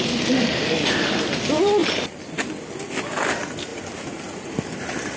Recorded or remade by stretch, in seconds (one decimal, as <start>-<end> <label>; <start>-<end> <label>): 0.0-5.2 recorded